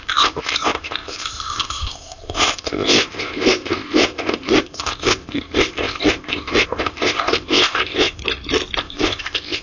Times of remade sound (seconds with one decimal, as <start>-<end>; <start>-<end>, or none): 0.0-8.2; 8.8-9.6